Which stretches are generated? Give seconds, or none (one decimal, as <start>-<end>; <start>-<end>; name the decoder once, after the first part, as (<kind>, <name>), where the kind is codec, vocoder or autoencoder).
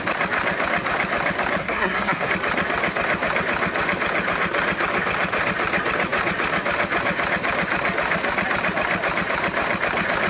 1.6-2.3 (codec, SNAC)